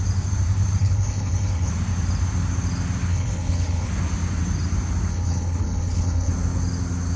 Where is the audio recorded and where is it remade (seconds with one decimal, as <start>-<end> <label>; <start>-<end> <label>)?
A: 0.0-0.8 recorded; 0.8-1.7 remade; 1.7-3.1 recorded; 3.1-3.9 remade; 3.9-5.1 recorded; 5.1-6.3 remade; 6.3-7.2 recorded

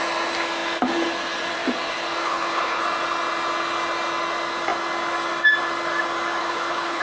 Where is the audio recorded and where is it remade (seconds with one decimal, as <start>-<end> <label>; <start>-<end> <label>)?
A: 0.0-2.2 recorded; 2.2-2.8 remade; 2.8-6.4 recorded; 6.4-7.0 remade

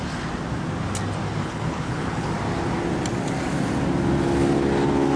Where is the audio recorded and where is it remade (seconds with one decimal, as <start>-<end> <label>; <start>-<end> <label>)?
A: 0.0-1.4 recorded; 1.4-2.3 remade; 2.3-5.2 recorded